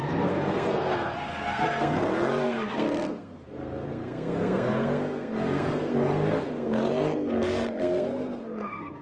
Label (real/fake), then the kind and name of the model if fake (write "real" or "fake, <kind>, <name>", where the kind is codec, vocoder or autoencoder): fake, codec, SNAC